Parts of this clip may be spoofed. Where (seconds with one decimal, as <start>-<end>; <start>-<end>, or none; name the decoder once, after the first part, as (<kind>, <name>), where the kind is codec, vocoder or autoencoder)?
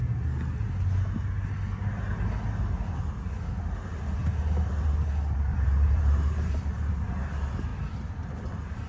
5.5-6.9 (vocoder, BigVGAN v2)